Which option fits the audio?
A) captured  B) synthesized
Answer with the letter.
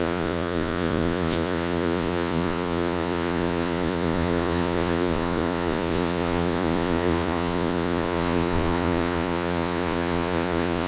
B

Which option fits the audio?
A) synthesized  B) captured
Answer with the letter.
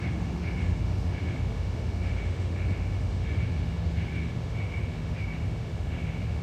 A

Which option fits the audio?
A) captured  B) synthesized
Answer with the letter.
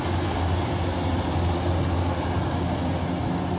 A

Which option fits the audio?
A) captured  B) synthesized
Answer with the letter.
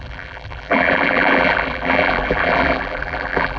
B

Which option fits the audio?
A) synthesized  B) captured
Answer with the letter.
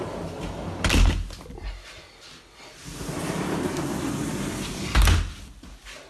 B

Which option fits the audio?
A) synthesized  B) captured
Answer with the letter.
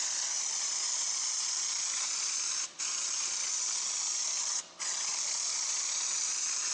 B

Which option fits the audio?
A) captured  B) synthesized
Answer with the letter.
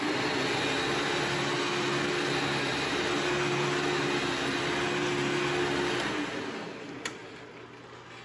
A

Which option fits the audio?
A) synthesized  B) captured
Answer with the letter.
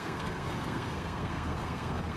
A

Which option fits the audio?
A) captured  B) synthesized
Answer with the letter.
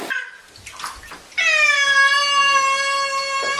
A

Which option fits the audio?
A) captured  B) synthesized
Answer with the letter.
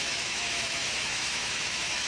B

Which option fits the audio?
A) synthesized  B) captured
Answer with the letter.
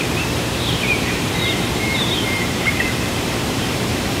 A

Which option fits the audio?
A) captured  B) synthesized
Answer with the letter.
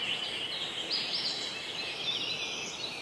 A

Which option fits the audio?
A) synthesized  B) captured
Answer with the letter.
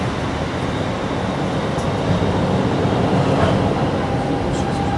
B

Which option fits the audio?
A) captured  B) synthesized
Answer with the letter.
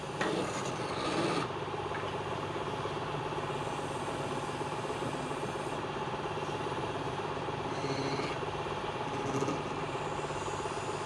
A